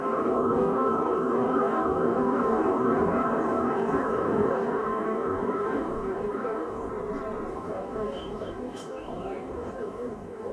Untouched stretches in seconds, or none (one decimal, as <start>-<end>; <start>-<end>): 6.9-7.5